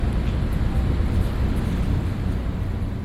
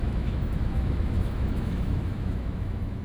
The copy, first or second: second